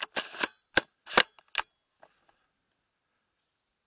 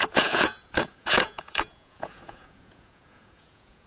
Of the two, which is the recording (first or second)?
first